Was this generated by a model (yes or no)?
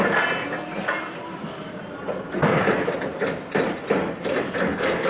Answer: no